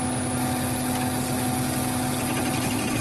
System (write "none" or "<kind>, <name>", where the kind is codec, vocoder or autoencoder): none